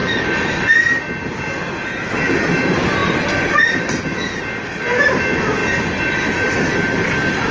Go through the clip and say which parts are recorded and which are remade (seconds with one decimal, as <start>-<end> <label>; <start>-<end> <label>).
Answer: 0.0-3.0 recorded; 3.0-4.0 remade; 4.0-7.5 recorded